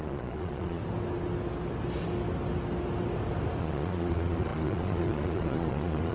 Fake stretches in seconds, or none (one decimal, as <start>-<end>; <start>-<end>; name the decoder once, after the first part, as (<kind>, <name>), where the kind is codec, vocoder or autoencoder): 0.0-0.8 (vocoder, Vocos); 3.6-6.1